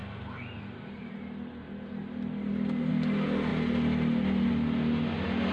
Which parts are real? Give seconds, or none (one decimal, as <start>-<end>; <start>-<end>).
0.0-5.5